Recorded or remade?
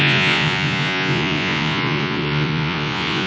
remade